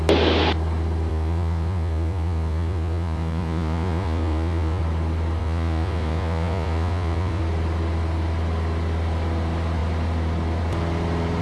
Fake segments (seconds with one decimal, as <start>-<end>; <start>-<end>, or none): 1.1-4.8; 5.4-7.4